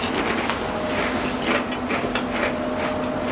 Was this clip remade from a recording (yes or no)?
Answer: no